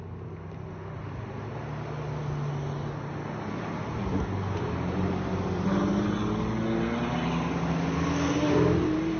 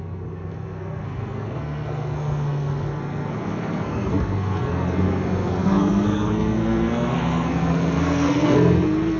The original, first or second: first